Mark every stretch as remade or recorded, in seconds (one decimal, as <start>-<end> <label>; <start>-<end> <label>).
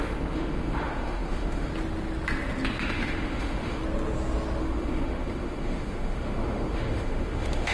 0.0-1.7 remade; 1.7-2.8 recorded; 2.8-3.8 remade; 3.8-4.6 recorded; 4.6-7.7 remade